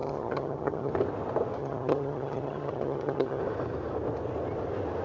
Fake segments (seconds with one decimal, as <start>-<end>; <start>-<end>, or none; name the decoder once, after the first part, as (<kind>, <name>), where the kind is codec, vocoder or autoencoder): 0.0-0.9 (vocoder, HiFi-GAN); 1.6-3.4